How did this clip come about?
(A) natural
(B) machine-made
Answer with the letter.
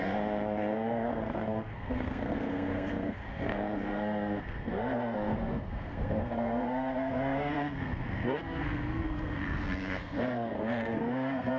B